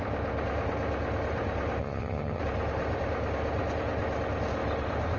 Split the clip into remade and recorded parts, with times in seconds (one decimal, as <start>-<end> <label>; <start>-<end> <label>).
0.0-1.8 recorded; 1.8-2.4 remade; 2.4-5.2 recorded